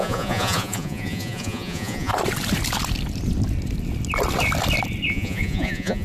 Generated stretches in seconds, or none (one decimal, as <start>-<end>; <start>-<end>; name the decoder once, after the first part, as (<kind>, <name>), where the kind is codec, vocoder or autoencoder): 0.0-2.1 (vocoder, Vocos); 5.1-6.0